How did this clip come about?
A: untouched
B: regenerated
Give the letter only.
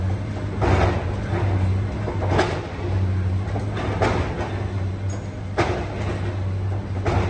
A